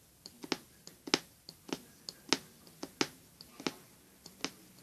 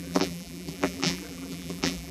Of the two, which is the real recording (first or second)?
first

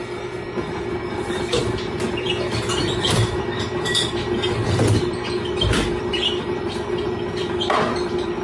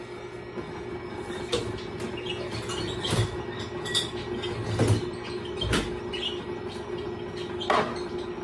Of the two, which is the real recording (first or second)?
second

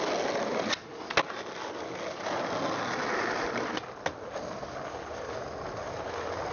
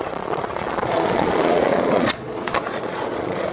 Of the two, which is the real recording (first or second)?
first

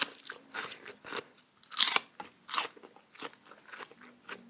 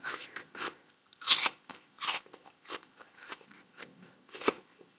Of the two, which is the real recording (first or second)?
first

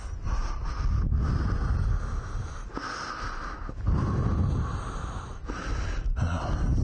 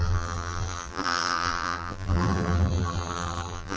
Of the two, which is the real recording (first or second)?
first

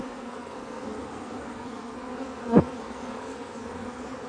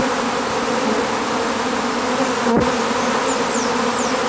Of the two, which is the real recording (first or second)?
second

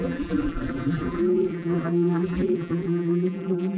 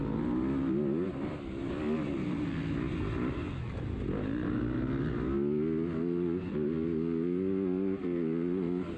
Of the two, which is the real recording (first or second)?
second